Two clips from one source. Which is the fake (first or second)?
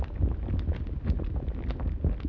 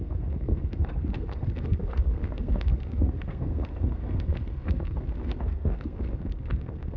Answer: second